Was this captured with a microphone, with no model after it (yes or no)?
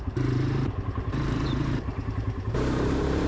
no